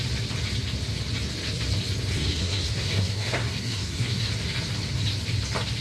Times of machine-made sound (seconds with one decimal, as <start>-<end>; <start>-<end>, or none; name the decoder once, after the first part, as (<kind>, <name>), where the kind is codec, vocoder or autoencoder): 2.1-4.3 (codec, SNAC)